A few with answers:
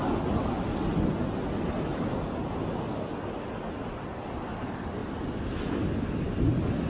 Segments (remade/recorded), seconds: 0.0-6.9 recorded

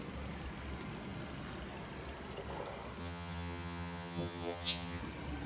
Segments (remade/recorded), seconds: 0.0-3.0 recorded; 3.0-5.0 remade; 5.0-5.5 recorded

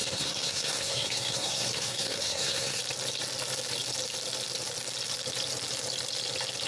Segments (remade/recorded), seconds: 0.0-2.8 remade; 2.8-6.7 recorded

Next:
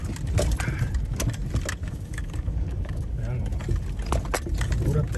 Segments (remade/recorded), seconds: 0.0-1.8 recorded; 1.8-3.2 remade; 3.2-5.2 recorded

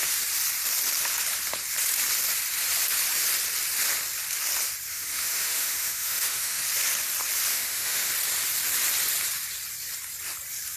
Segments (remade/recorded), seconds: 0.0-4.9 recorded; 4.9-6.6 remade; 6.6-7.5 recorded; 7.5-8.1 remade; 8.1-10.8 recorded

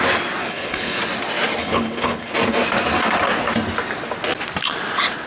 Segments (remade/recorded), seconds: 0.0-0.4 recorded; 0.4-1.0 remade; 1.0-1.6 recorded; 1.6-2.3 remade; 2.3-5.3 recorded